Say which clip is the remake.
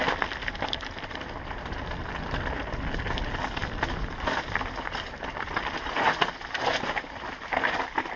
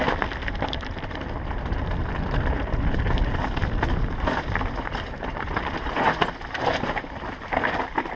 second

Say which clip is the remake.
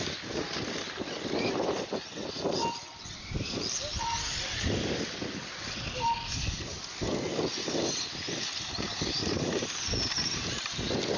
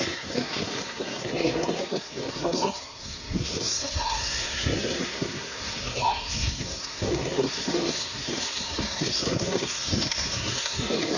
second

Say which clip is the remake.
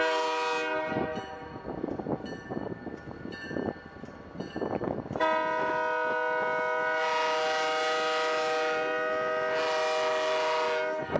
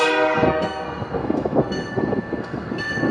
second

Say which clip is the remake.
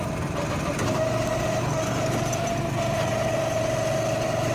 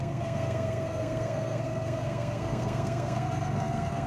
second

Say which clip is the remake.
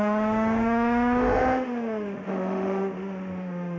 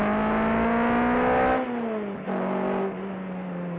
first